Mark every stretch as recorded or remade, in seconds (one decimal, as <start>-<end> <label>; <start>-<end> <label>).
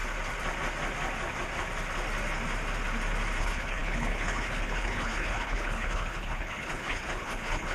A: 0.0-3.4 recorded; 3.4-7.7 remade